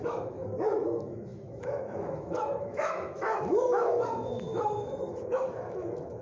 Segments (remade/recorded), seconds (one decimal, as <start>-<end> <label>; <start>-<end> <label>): 0.0-6.2 remade